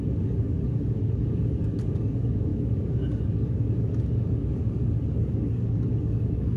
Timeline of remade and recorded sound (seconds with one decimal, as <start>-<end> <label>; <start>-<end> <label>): 0.0-6.6 remade

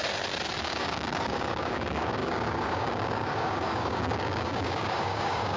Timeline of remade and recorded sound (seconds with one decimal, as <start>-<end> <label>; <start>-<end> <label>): 0.0-0.6 recorded; 0.6-5.6 remade

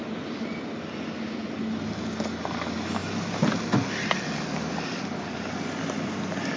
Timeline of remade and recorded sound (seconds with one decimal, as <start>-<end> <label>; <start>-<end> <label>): 0.0-6.6 recorded

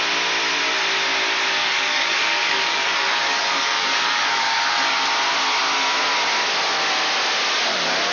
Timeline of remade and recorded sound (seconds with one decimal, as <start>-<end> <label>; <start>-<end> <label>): 0.0-1.6 recorded; 1.6-5.0 remade; 5.0-8.1 recorded

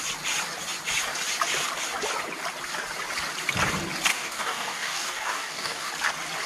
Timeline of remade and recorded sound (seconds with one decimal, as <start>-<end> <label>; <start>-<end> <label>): 0.0-4.1 recorded; 4.1-5.9 remade; 5.9-6.5 recorded

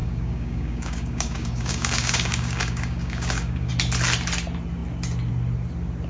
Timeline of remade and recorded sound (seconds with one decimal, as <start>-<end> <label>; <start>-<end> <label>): 0.0-3.7 remade; 3.7-6.1 recorded

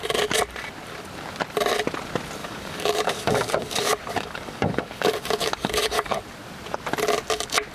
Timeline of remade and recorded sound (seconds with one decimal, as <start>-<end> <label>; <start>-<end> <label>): 0.0-2.4 recorded; 2.4-6.2 remade; 6.2-7.7 recorded

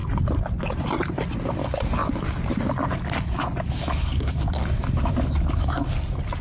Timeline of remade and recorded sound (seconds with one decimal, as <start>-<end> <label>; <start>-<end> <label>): 0.0-3.8 recorded; 3.8-5.9 remade; 5.9-6.4 recorded